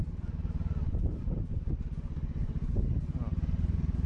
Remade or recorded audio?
recorded